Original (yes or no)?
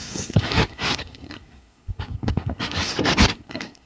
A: no